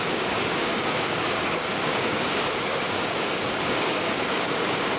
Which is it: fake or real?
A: fake